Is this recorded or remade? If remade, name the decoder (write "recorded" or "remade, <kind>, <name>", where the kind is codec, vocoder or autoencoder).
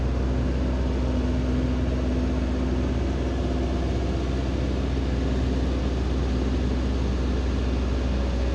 recorded